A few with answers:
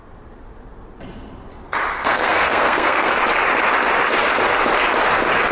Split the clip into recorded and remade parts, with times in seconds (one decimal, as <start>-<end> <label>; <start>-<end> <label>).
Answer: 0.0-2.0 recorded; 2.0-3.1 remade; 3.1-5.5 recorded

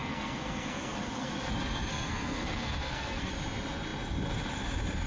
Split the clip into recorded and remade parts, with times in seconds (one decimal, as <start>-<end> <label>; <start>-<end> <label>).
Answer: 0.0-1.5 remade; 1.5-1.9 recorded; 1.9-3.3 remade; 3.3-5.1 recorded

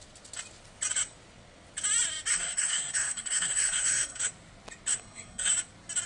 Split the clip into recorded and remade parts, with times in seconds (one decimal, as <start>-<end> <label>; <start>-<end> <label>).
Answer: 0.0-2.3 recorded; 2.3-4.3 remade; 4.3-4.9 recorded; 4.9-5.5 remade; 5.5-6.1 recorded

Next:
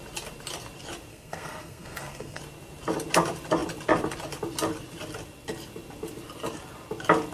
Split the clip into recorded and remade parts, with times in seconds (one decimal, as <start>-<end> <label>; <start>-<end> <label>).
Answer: 0.0-1.1 recorded; 1.1-2.4 remade; 2.4-7.3 recorded

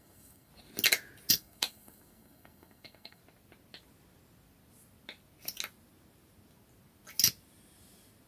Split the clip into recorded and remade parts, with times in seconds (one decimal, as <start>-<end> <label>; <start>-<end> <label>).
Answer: 0.0-0.5 remade; 0.5-1.3 recorded; 1.3-3.2 remade; 3.2-8.3 recorded

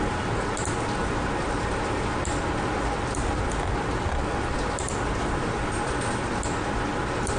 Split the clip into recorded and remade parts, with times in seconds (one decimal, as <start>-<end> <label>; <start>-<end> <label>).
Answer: 0.0-7.4 recorded

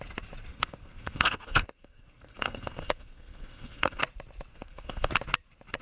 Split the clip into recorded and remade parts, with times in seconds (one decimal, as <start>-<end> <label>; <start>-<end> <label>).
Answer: 0.0-0.5 recorded; 0.5-4.0 remade; 4.0-4.5 recorded; 4.5-5.1 remade; 5.1-5.8 recorded